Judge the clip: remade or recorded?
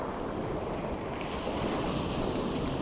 recorded